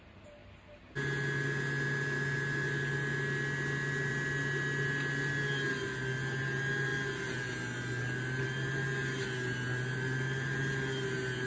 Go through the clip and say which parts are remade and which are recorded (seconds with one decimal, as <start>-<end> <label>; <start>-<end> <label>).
0.0-11.5 recorded